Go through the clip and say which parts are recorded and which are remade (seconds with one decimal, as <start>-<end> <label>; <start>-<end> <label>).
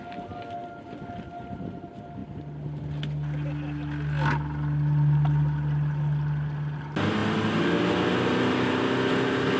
0.0-9.6 recorded